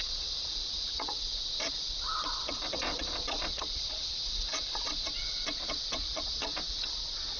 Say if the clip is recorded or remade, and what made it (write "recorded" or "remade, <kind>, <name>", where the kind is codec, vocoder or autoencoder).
remade, vocoder, Vocos